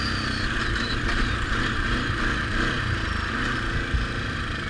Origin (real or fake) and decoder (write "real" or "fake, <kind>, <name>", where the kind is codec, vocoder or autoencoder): real